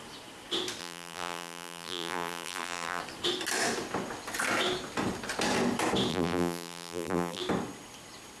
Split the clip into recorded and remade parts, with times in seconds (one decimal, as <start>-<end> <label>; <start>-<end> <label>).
0.0-0.8 recorded; 0.8-3.0 remade; 3.0-6.1 recorded; 6.1-7.4 remade; 7.4-8.4 recorded